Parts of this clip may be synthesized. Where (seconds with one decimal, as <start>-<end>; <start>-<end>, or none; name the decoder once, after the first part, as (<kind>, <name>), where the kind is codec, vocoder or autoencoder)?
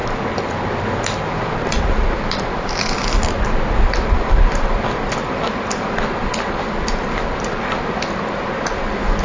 none